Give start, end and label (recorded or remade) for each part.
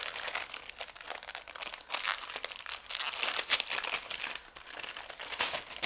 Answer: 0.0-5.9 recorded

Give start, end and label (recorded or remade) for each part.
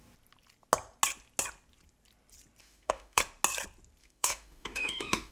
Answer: 0.0-2.6 recorded; 2.6-3.2 remade; 3.2-4.0 recorded; 4.0-5.3 remade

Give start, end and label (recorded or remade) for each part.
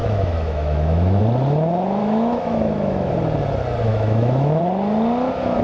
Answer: 0.0-1.2 remade; 1.2-2.0 recorded; 2.0-3.1 remade; 3.1-3.9 recorded; 3.9-4.6 remade; 4.6-5.6 recorded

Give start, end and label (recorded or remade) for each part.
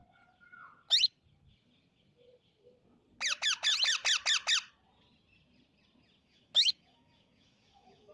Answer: 0.0-6.2 recorded; 6.2-8.1 remade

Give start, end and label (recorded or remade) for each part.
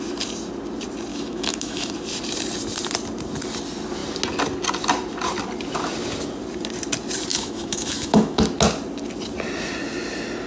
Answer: 0.0-1.1 recorded; 1.1-1.9 remade; 1.9-7.3 recorded; 7.3-8.4 remade; 8.4-10.5 recorded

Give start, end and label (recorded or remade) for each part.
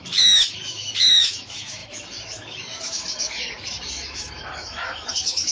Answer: 0.0-5.5 remade